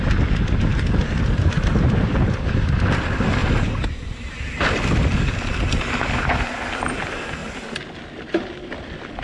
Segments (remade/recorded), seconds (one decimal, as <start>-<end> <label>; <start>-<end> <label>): 0.0-9.2 recorded